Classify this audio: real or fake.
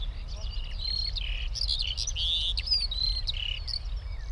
real